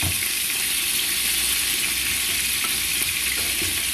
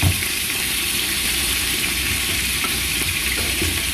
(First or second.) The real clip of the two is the first